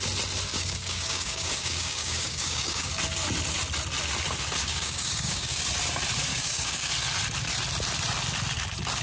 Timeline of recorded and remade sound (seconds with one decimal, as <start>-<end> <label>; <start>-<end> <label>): 0.0-0.5 recorded; 0.5-2.9 remade; 2.9-4.6 recorded; 4.6-5.6 remade; 5.6-6.3 recorded; 6.3-6.9 remade; 6.9-9.0 recorded